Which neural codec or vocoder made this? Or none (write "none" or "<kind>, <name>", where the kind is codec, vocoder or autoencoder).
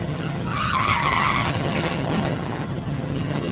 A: vocoder, HiFi-GAN